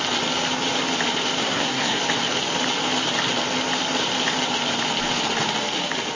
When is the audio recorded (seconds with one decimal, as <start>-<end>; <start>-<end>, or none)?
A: 0.0-1.4; 2.0-6.2